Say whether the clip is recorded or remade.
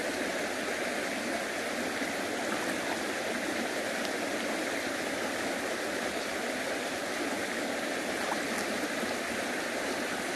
recorded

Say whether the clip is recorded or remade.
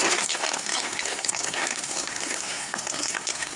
remade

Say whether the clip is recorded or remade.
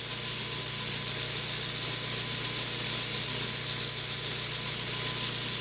recorded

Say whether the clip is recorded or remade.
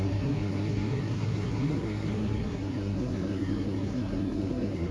remade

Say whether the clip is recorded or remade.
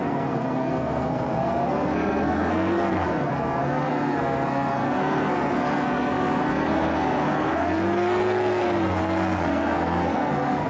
remade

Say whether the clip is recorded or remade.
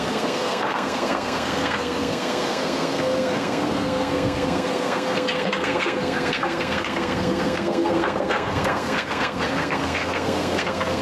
remade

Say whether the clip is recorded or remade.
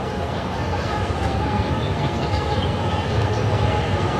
remade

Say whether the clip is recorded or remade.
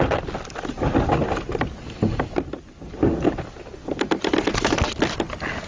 recorded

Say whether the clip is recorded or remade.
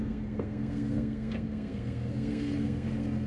remade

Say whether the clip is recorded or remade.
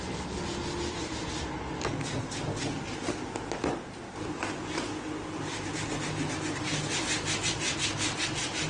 recorded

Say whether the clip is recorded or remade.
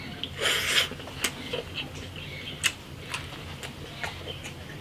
recorded